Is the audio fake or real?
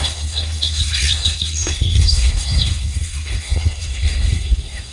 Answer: fake